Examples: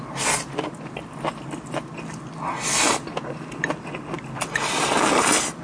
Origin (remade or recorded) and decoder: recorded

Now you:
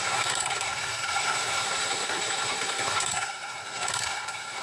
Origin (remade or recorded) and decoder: remade, codec, SNAC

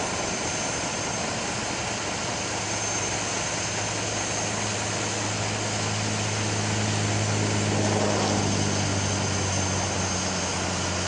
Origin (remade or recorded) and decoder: recorded